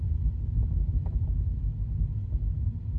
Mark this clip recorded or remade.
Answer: recorded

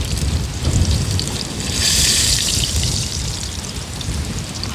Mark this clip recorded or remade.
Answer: remade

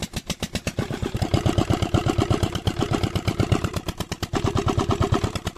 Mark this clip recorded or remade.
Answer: recorded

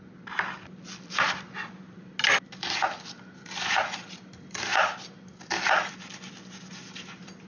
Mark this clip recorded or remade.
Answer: recorded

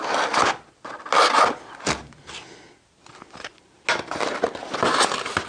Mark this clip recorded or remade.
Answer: recorded